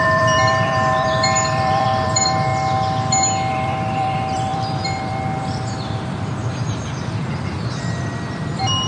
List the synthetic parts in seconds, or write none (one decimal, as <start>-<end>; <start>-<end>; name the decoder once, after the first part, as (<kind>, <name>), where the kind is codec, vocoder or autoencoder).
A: 0.0-2.5 (vocoder, BigVGAN v2); 3.5-8.9